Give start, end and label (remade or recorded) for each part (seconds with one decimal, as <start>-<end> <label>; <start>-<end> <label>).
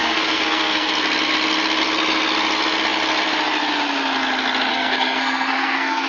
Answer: 0.0-0.9 remade; 0.9-4.7 recorded; 4.7-6.1 remade